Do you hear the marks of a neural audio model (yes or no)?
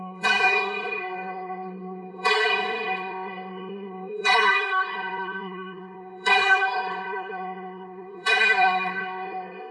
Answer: yes